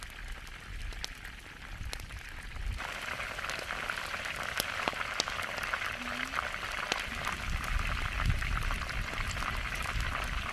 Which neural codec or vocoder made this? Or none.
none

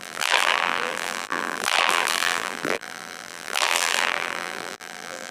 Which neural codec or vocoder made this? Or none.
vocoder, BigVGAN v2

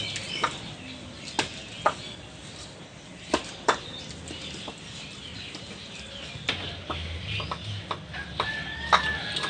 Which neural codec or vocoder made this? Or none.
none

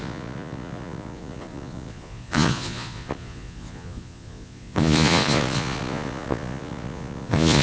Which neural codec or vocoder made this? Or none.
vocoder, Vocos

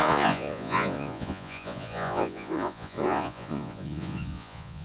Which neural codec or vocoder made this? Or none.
vocoder, Vocos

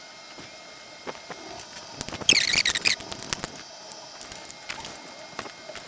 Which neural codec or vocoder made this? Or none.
none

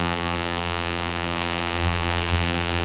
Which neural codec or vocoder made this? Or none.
vocoder, BigVGAN v2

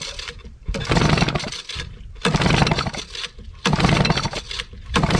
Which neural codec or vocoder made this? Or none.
none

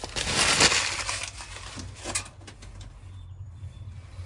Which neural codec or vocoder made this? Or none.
none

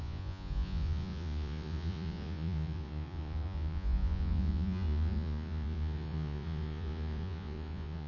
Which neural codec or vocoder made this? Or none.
vocoder, Vocos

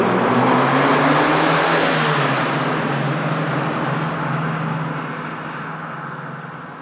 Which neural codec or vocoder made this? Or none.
none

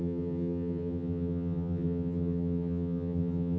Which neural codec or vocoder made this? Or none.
vocoder, HiFi-GAN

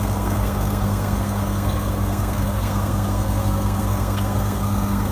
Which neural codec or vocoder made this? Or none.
codec, SNAC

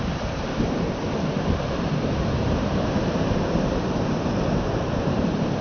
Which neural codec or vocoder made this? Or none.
vocoder, BigVGAN v2